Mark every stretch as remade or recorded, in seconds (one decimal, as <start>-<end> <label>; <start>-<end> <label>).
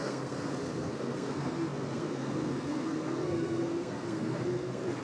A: 0.0-5.0 remade